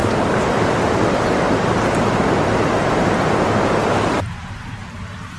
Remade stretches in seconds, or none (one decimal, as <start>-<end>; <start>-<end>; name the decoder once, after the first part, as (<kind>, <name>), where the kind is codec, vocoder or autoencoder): 0.0-3.2 (vocoder, BigVGAN v2); 3.8-5.4